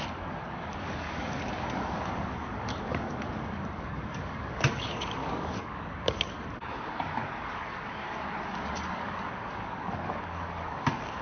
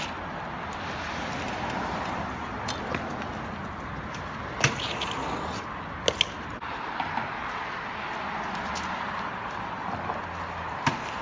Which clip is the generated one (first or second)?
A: first